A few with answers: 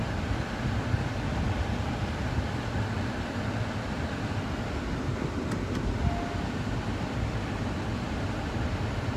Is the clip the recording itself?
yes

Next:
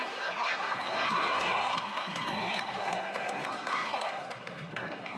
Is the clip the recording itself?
no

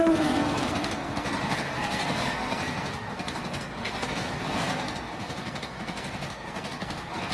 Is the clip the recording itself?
no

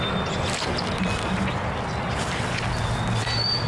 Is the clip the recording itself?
yes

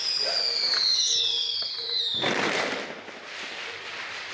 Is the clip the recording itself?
yes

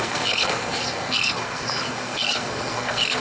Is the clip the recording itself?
no